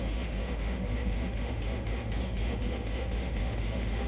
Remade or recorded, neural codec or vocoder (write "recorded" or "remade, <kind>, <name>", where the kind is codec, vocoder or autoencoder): remade, autoencoder, DAC-VAE